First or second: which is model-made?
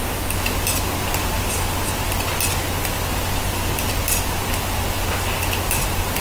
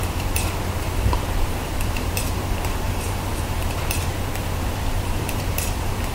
second